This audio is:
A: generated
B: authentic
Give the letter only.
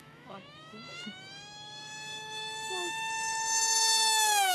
A